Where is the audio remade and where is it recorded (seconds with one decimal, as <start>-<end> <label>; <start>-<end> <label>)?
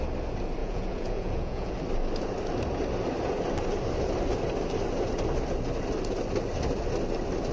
0.0-0.6 recorded; 0.6-1.7 remade; 1.7-7.5 recorded